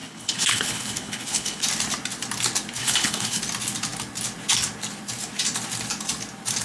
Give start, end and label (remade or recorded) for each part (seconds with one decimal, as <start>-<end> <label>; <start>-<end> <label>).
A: 0.0-1.6 remade; 1.6-2.8 recorded; 2.8-3.4 remade; 3.4-6.6 recorded